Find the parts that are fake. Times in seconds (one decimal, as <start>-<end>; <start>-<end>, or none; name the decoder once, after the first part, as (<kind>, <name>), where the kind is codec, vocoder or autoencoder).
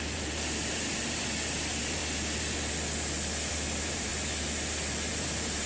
0.0-2.0 (vocoder, BigVGAN v2); 3.5-4.1; 5.1-5.7